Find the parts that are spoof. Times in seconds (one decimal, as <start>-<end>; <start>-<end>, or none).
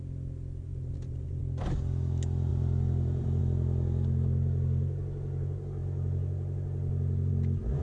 0.7-1.4; 2.5-3.4